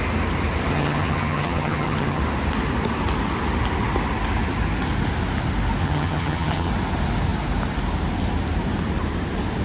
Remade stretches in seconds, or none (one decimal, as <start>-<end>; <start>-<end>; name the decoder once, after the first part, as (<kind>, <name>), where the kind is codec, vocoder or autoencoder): 0.7-2.2 (vocoder, HiFi-GAN); 5.8-6.7